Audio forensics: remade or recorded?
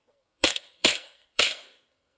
remade